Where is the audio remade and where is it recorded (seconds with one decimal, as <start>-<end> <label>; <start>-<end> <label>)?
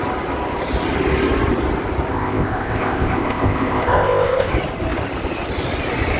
0.0-2.1 recorded; 2.1-4.5 remade; 4.5-6.2 recorded